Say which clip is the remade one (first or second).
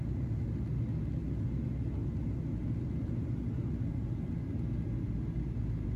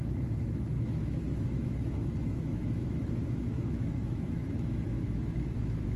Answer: second